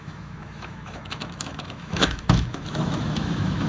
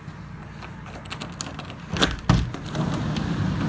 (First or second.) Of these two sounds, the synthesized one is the first